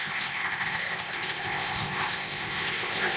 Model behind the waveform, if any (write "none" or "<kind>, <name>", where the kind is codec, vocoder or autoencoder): codec, ZipCodec